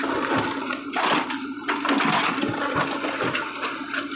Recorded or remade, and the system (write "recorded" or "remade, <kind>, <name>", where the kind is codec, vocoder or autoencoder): remade, vocoder, BigVGAN v2